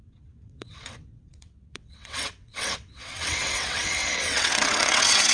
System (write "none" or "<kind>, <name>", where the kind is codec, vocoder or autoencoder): vocoder, WaveNeXt